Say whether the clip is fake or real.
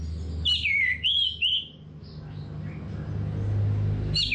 real